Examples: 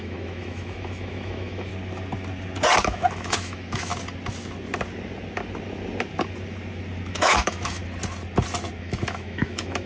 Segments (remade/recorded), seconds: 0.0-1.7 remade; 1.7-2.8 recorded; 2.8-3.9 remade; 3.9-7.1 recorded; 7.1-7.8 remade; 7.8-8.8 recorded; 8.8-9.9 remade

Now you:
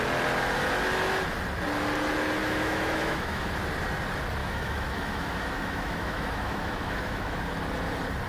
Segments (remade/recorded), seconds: 0.0-2.4 recorded; 2.4-3.5 remade; 3.5-4.4 recorded; 4.4-7.4 remade; 7.4-8.3 recorded

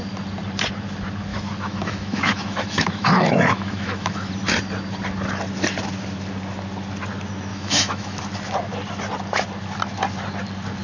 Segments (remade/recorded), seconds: 0.0-1.3 recorded; 1.3-4.3 remade; 4.3-7.5 recorded; 7.5-8.2 remade; 8.2-10.8 recorded

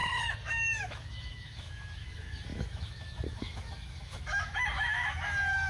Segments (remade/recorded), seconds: 0.0-5.7 remade